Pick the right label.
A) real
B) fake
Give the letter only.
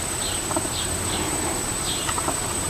B